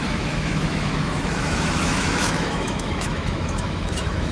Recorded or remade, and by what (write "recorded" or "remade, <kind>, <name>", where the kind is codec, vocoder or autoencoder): remade, autoencoder, DAC-VAE